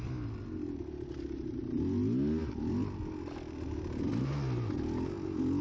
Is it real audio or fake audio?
real